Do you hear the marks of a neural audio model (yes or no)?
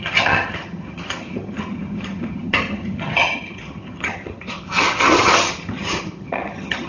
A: yes